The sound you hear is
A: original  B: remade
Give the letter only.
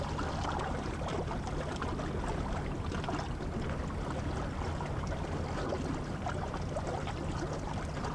A